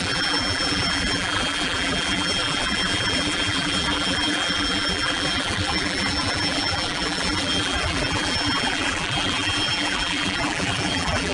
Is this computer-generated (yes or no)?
yes